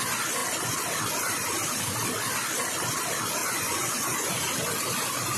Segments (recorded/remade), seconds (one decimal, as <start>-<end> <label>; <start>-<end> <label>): 0.0-3.4 recorded; 3.4-4.4 remade; 4.4-5.4 recorded